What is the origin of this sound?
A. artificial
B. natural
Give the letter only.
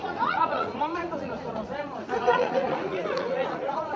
A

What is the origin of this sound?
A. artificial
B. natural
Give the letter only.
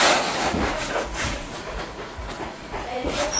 A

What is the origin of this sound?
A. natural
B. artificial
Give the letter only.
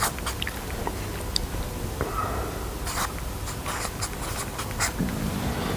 A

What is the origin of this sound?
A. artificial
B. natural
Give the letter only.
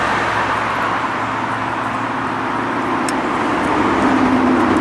B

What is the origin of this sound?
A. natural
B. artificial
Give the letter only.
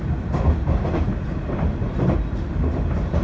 A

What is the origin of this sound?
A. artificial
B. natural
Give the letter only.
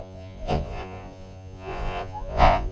A